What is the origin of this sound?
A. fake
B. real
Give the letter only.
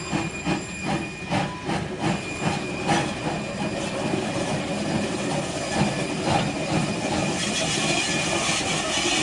A